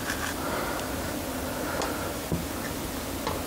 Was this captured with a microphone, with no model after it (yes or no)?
yes